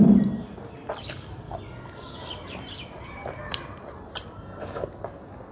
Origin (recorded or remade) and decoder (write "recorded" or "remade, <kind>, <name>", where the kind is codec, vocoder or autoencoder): recorded